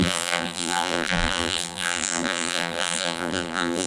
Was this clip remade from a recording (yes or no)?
yes